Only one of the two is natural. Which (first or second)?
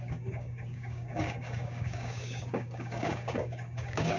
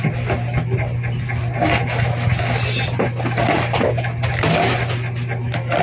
second